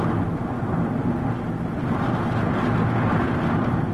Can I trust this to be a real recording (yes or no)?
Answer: yes